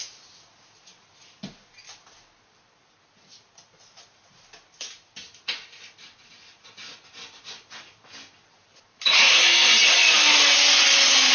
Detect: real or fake real